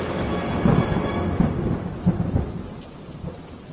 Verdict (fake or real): real